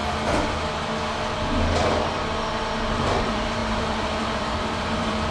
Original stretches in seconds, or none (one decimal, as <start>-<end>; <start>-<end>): 0.0-2.8